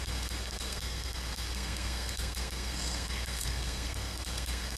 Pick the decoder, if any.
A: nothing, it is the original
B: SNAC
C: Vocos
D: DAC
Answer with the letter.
B